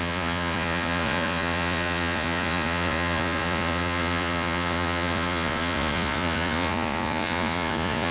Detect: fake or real fake